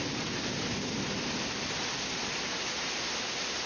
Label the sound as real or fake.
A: real